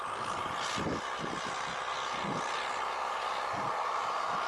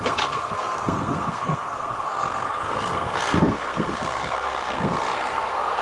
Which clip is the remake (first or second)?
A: second